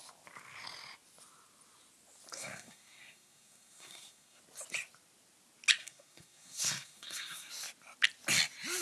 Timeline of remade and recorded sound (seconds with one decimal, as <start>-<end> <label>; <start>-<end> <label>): 0.0-2.3 recorded; 2.3-4.4 remade; 4.4-5.8 recorded; 5.8-7.5 remade; 7.5-8.8 recorded